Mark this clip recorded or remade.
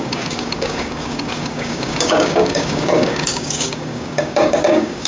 remade